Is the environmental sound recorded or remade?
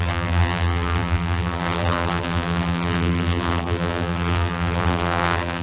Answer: remade